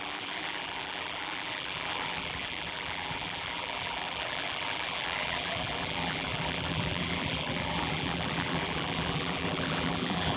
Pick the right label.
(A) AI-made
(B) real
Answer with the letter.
A